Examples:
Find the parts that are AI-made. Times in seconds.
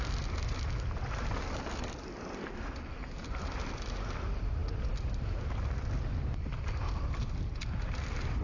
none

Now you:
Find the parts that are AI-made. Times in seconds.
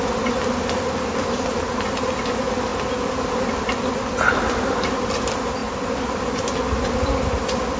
none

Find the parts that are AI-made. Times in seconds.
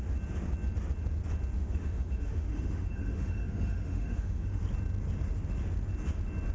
1.6-4.6 (autoencoder, DAC-VAE)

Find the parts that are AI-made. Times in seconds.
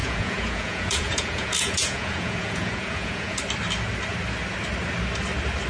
0.0-3.4 (vocoder, Vocos)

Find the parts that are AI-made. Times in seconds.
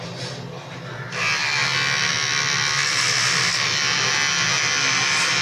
none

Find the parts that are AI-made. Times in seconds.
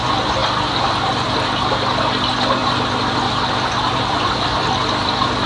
0.4-1.6 (vocoder, BigVGAN v2)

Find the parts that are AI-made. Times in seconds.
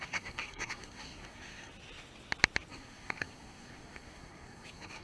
0.0-1.7 (codec, SNAC); 2.7-5.0